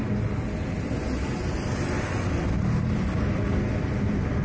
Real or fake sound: real